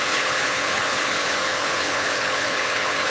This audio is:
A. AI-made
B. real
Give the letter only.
A